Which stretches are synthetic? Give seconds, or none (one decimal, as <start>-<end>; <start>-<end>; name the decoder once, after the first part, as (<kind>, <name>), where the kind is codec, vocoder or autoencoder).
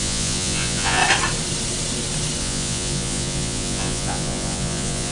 0.0-1.0 (vocoder, Vocos); 2.4-5.1